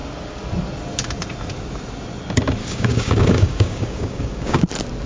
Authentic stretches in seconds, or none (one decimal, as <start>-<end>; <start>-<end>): 0.0-2.6; 4.6-5.1